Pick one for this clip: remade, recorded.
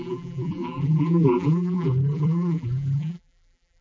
remade